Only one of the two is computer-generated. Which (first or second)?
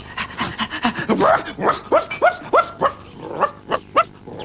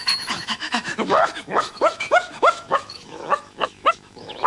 second